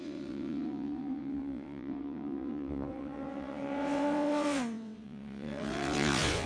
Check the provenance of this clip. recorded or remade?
remade